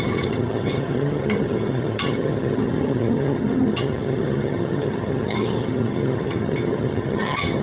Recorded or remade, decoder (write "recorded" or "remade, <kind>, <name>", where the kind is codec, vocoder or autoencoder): remade, vocoder, HiFi-GAN